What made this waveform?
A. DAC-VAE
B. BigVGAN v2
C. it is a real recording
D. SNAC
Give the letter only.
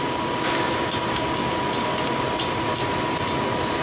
C